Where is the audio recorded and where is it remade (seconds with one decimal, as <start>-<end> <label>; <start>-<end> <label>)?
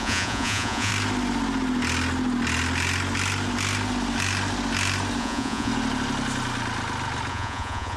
0.0-0.9 remade; 0.9-5.2 recorded; 5.2-5.7 remade; 5.7-7.3 recorded; 7.3-8.0 remade